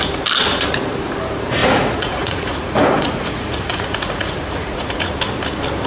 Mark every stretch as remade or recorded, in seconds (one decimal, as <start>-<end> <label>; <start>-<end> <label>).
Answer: 0.0-1.6 recorded; 1.6-5.1 remade; 5.1-5.9 recorded